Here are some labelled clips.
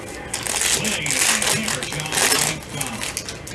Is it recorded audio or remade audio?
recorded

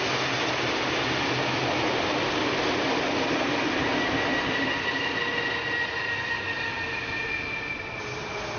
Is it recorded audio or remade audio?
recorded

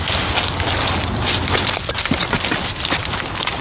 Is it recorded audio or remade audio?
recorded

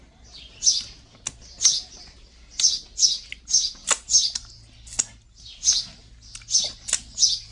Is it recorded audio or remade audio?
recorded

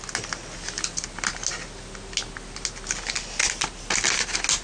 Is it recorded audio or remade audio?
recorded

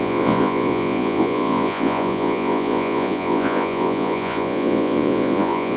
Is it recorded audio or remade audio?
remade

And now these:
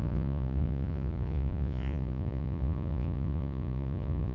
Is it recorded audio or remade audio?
remade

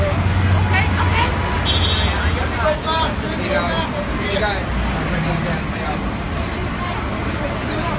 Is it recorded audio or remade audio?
recorded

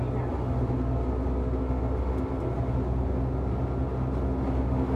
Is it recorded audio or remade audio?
recorded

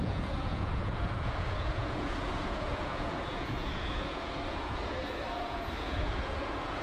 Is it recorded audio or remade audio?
remade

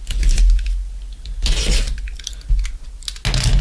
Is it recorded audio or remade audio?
recorded